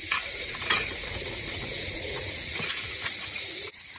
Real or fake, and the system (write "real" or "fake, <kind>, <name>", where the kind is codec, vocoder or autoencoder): fake, vocoder, Vocos